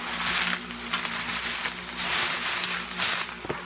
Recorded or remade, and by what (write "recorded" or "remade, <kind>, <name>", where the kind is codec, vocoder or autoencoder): recorded